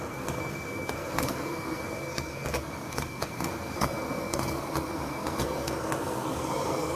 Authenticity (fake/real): fake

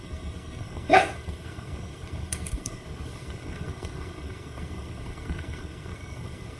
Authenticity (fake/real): fake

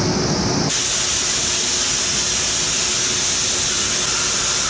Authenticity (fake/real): real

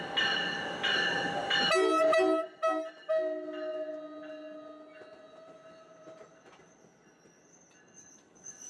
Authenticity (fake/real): real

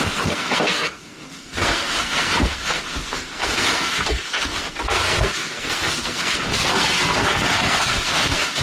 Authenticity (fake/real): fake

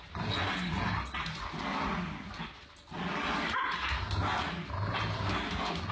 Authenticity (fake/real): real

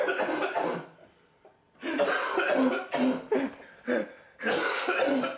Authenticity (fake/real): real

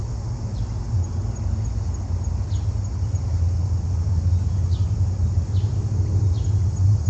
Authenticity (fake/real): real